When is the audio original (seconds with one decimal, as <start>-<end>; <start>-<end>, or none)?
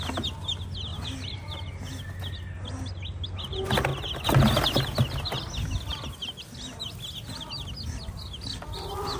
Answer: 0.0-9.2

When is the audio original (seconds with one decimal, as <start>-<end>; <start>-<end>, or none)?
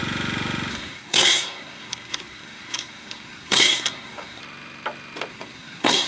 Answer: 0.0-0.7; 4.4-5.3